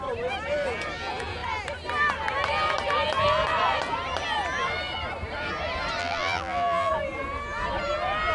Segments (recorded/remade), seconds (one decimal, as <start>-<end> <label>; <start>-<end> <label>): 0.0-6.0 recorded; 6.0-6.9 remade; 6.9-8.3 recorded